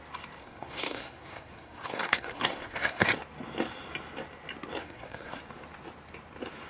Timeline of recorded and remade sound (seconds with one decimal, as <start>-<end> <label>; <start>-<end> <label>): 0.0-0.4 recorded; 0.4-3.1 remade; 3.1-4.8 recorded; 4.8-5.4 remade; 5.4-6.7 recorded